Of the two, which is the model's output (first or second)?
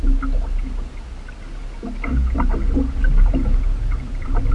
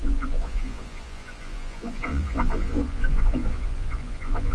second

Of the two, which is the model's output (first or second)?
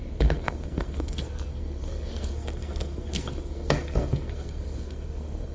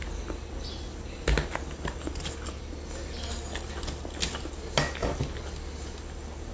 first